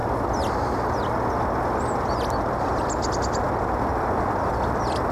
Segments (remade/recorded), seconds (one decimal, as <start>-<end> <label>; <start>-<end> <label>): 0.0-2.5 recorded; 2.5-5.1 remade